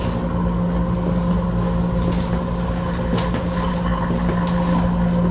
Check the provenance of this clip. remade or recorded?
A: recorded